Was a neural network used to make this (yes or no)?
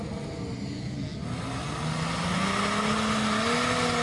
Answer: no